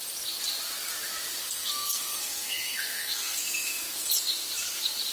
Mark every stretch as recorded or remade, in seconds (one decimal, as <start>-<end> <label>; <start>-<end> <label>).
0.0-1.4 recorded; 1.4-4.1 remade; 4.1-5.1 recorded